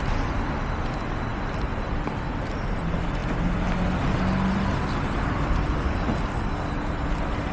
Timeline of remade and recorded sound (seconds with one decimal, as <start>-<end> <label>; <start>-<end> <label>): 0.0-7.5 recorded